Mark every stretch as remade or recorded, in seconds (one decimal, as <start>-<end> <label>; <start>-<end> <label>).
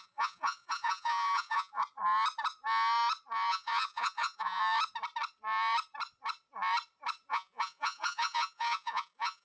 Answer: 0.0-1.8 remade; 1.8-3.5 recorded; 3.5-4.6 remade; 4.6-7.3 recorded; 7.3-9.4 remade